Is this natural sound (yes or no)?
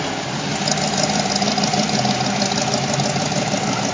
yes